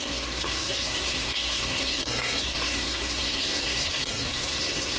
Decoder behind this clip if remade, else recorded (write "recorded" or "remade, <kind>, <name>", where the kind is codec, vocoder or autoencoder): remade, codec, SNAC